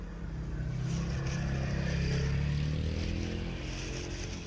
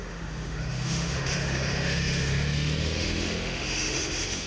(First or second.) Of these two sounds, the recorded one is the first